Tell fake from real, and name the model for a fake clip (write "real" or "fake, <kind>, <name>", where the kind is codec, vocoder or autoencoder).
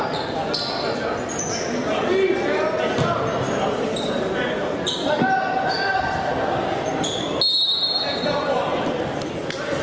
real